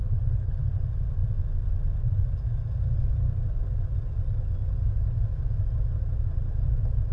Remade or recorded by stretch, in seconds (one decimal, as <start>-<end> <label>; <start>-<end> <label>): 0.0-0.7 remade; 0.7-7.1 recorded